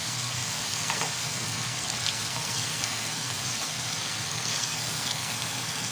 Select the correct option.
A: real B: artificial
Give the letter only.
B